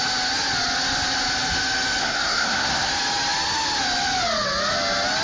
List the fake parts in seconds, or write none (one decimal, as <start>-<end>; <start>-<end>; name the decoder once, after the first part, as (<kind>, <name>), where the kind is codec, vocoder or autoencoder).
2.0-2.9 (codec, SNAC)